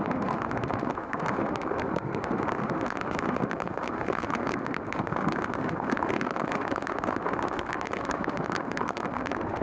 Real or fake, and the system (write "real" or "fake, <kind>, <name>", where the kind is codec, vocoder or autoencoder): fake, autoencoder, DAC-VAE